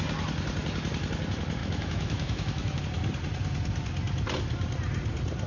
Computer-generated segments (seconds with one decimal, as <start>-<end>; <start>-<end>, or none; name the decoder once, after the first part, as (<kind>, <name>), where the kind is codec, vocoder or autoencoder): 1.6-2.8 (autoencoder, DAC-VAE)